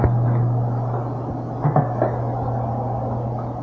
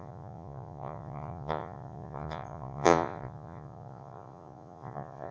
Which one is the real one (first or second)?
first